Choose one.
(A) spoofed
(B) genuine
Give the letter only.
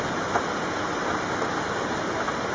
B